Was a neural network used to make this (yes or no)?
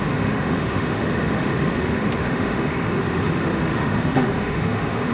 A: yes